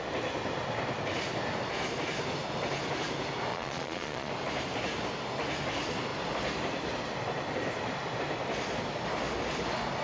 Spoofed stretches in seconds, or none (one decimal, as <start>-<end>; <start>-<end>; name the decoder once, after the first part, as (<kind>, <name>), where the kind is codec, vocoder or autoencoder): 3.5-4.3 (vocoder, Vocos)